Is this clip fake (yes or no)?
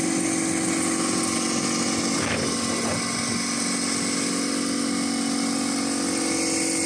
no